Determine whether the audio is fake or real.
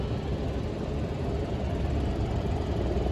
fake